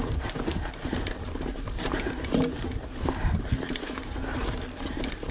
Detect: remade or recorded remade